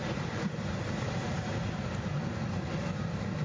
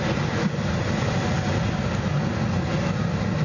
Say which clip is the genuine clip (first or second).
second